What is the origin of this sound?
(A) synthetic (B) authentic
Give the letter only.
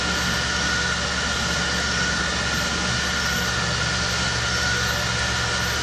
B